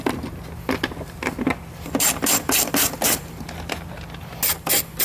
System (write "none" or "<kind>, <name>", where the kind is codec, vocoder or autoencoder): none